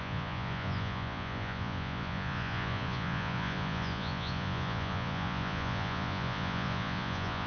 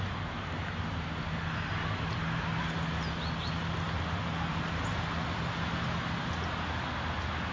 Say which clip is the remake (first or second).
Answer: first